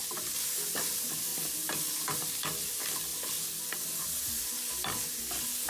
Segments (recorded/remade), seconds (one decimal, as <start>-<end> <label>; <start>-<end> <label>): 0.0-5.7 recorded

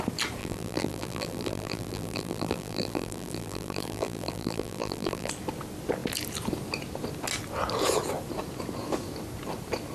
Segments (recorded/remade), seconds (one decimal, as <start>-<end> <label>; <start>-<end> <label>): 0.0-0.4 recorded; 0.4-5.3 remade; 5.3-9.9 recorded